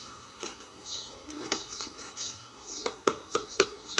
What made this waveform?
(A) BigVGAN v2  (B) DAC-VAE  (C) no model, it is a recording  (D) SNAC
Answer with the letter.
D